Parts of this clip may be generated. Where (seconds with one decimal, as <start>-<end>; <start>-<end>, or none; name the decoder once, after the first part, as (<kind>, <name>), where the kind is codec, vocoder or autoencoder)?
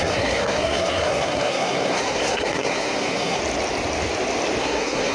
0.0-3.4 (codec, SNAC); 4.6-5.1